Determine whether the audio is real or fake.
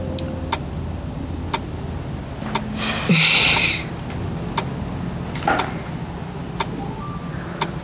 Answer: real